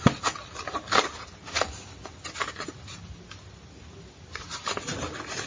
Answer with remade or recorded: recorded